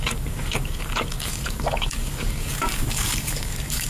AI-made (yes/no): yes